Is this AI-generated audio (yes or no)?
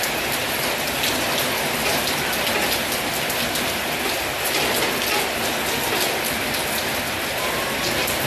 no